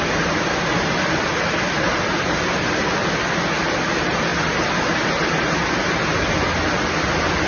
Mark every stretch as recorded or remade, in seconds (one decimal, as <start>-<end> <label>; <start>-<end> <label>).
0.0-7.5 recorded